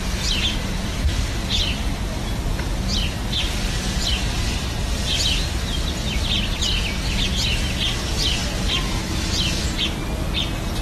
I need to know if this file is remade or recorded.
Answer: recorded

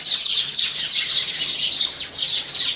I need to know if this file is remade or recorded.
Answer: recorded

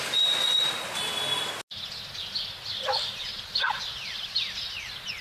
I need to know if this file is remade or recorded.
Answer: recorded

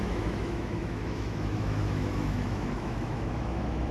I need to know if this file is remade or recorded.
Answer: remade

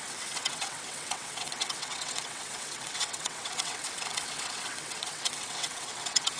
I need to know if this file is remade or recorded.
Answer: remade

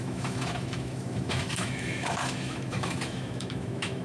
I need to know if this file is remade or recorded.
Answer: remade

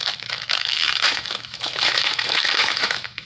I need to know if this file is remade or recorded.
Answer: remade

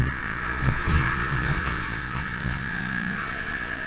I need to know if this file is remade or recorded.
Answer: remade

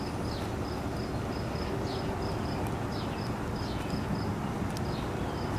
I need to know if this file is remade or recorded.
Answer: recorded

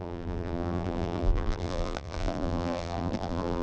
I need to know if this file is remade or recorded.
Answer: remade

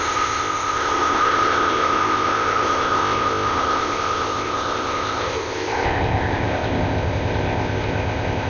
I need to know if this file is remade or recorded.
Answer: remade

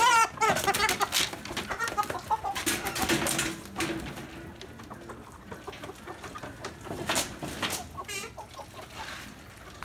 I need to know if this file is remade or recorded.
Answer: recorded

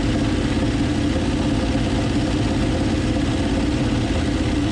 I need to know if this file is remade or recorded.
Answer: recorded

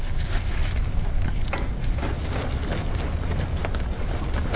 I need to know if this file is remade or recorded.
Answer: recorded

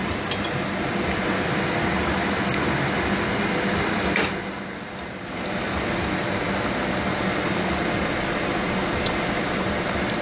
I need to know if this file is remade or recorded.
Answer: recorded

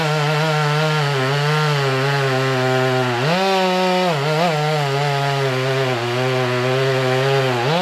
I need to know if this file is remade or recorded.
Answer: recorded